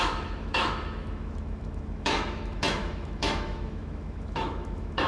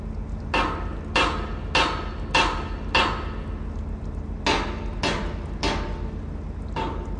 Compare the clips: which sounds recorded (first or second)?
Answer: second